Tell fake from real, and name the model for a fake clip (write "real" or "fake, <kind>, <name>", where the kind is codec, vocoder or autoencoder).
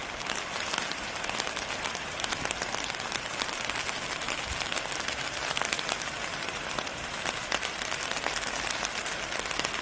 fake, vocoder, BigVGAN v2